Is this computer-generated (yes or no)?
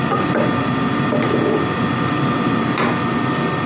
no